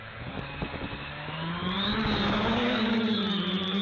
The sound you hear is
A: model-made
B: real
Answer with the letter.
A